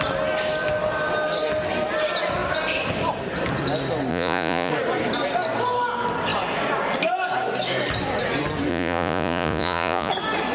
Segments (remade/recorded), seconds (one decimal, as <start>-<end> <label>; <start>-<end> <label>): 0.0-4.1 recorded; 4.1-4.7 remade; 4.7-8.7 recorded; 8.7-10.1 remade; 10.1-10.5 recorded